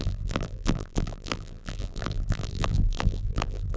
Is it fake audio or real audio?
fake